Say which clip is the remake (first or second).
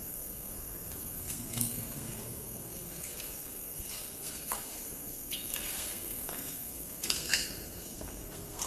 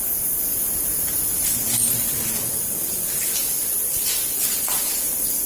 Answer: first